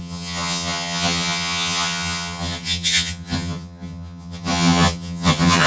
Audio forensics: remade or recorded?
remade